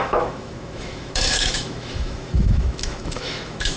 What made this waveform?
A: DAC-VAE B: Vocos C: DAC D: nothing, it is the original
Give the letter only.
A